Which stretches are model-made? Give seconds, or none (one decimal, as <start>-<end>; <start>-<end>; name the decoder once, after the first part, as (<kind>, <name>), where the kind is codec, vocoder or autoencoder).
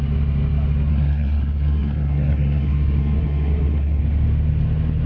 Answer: 0.9-4.0 (codec, SNAC)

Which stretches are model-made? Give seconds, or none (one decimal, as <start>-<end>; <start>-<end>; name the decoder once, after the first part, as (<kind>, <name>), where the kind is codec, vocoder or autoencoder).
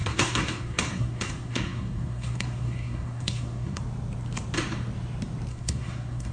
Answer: 0.0-3.8 (codec, SNAC); 5.5-6.3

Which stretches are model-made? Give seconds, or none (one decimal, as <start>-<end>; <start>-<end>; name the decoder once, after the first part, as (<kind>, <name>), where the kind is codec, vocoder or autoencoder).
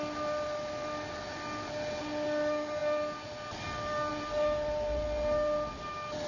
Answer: none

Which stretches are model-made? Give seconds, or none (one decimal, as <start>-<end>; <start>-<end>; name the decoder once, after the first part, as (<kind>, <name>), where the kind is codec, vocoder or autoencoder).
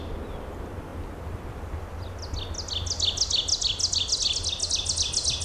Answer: none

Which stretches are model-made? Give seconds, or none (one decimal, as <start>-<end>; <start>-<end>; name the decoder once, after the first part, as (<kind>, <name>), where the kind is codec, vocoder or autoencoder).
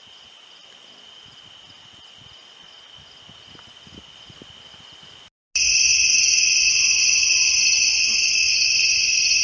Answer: 5.9-7.5 (vocoder, Vocos)